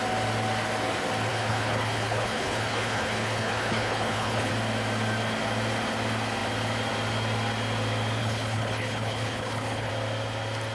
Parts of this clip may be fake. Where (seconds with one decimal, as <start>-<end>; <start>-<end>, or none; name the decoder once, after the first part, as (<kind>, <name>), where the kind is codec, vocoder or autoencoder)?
1.3-4.5 (codec, HILCodec); 8.2-9.9